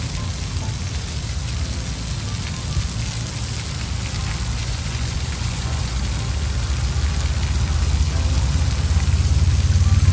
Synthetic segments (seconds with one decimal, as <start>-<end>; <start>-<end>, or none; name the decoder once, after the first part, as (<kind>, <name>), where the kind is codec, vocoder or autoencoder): 4.6-6.0 (vocoder, Vocos)